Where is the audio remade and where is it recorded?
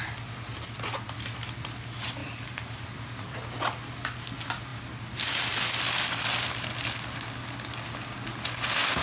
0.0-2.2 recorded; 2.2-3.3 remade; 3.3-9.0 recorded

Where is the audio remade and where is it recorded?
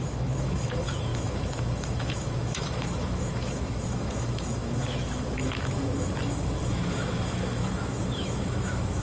0.0-9.0 remade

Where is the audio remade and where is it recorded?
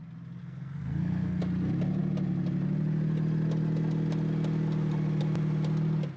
0.0-0.4 recorded; 0.4-1.4 remade; 1.4-6.2 recorded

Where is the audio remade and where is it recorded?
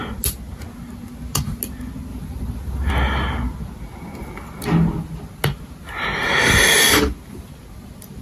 0.0-2.1 recorded; 2.1-2.9 remade; 2.9-8.2 recorded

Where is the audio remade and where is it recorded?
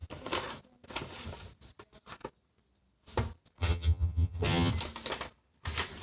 0.0-3.6 recorded; 3.6-4.7 remade; 4.7-6.0 recorded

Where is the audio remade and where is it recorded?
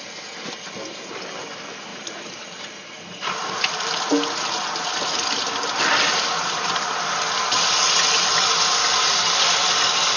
0.0-1.9 recorded; 1.9-4.0 remade; 4.0-10.2 recorded